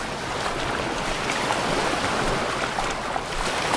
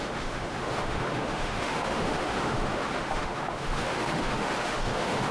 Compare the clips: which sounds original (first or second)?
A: first